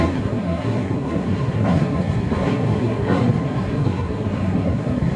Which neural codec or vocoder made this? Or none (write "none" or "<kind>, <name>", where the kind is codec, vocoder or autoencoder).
codec, SNAC